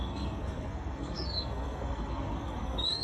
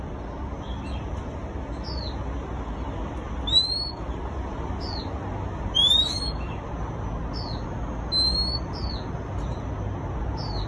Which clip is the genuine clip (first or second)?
second